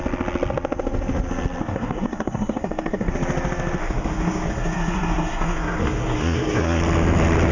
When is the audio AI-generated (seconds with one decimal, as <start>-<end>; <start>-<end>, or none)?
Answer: 1.6-3.1; 3.8-6.8